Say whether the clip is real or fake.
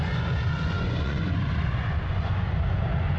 fake